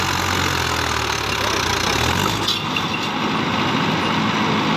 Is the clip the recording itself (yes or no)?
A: yes